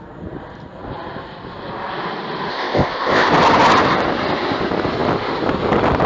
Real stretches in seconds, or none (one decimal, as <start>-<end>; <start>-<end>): 0.0-2.5; 3.3-6.1